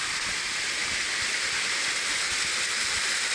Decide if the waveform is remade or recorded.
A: recorded